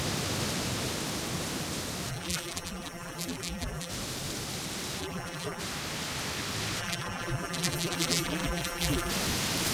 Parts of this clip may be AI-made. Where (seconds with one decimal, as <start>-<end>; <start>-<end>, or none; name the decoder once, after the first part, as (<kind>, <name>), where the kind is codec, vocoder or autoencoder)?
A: 2.1-3.9 (vocoder, BigVGAN v2); 5.0-5.6; 6.8-9.1